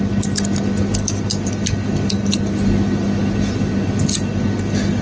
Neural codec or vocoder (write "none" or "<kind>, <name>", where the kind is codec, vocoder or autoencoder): none